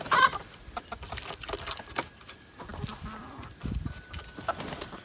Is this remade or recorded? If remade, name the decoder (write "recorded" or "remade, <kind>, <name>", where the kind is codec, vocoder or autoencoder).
recorded